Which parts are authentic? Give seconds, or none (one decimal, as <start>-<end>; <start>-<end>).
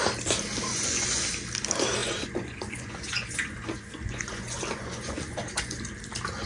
0.0-0.7; 1.3-2.0; 5.8-6.5